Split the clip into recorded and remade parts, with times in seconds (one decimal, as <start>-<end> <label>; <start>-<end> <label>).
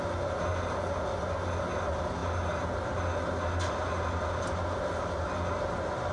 0.0-6.1 recorded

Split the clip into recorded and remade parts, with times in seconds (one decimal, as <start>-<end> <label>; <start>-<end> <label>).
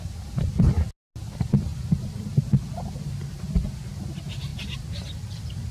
0.0-1.7 recorded; 1.7-2.5 remade; 2.5-4.5 recorded; 4.5-5.7 remade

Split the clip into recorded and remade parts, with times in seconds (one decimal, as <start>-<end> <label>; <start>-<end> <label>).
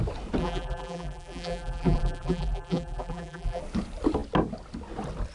0.0-0.4 recorded; 0.4-3.6 remade; 3.6-5.3 recorded